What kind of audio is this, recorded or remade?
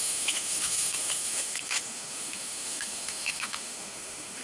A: remade